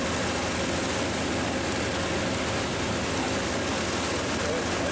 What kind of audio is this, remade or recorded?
recorded